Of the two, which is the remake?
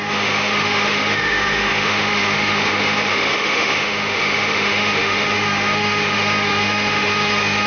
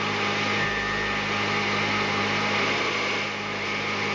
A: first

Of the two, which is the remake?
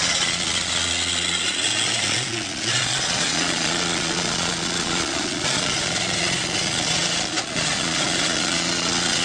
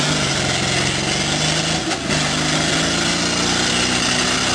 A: first